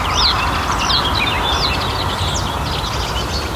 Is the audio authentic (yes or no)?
yes